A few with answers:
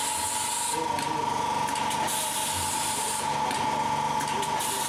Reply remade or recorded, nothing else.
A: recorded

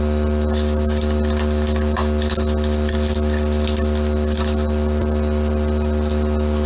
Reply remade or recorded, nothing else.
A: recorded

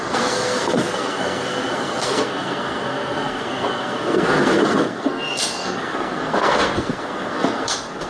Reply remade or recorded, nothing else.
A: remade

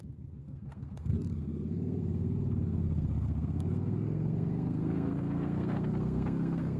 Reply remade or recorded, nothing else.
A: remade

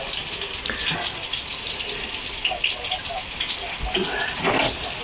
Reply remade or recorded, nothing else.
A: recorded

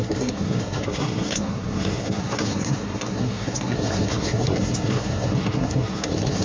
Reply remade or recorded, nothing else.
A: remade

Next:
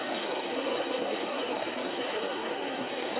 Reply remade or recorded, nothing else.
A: remade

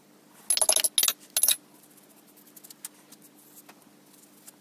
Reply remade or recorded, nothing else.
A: recorded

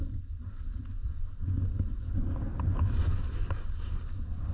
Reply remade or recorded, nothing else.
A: recorded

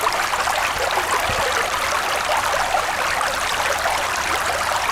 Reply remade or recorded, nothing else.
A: recorded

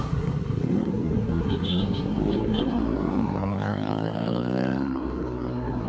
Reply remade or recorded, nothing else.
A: remade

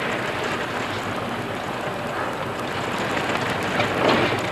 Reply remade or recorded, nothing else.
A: recorded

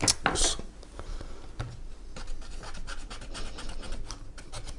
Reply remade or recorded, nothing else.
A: recorded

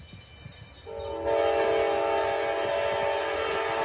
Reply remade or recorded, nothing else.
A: recorded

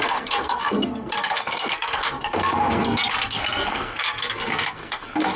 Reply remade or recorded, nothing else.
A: remade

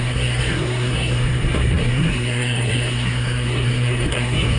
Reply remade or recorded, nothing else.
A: remade